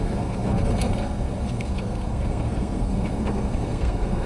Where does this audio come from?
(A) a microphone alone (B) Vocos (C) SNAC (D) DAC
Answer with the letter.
C